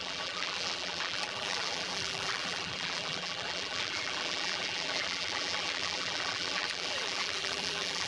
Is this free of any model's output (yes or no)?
no